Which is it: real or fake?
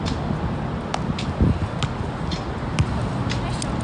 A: real